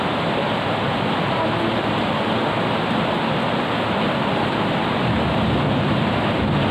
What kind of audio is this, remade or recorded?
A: recorded